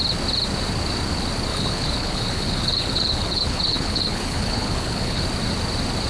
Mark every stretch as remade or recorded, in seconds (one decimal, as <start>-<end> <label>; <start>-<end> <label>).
0.0-1.5 recorded; 1.5-5.2 remade; 5.2-6.1 recorded